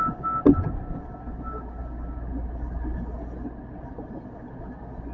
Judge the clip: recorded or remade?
recorded